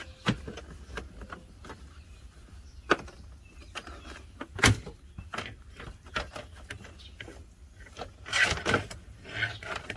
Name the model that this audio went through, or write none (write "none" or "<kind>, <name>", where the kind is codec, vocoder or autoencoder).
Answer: none